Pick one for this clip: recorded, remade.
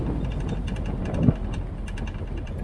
recorded